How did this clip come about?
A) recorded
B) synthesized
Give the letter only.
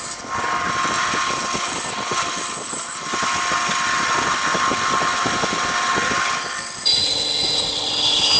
A